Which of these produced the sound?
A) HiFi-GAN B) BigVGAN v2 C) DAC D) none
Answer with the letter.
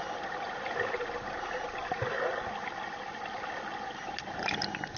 D